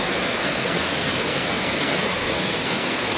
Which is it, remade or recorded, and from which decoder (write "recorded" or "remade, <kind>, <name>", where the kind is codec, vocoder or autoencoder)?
remade, codec, SNAC